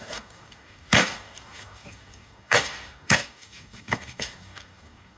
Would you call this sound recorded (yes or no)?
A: no